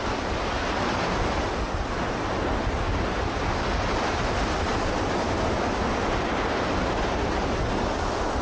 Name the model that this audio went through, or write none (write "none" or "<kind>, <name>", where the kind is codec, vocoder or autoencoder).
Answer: none